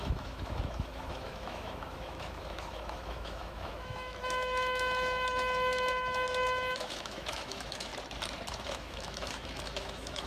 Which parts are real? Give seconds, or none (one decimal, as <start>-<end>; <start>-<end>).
7.9-8.5

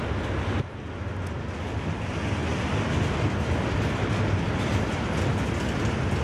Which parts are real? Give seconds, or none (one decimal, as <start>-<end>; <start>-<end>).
0.0-6.2

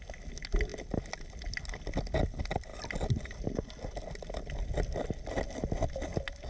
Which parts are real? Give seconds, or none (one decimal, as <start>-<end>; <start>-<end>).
0.0-6.5